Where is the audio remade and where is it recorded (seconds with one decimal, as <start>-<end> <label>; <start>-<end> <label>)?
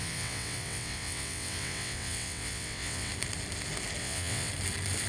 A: 0.0-3.1 remade; 3.1-4.0 recorded; 4.0-4.5 remade; 4.5-5.1 recorded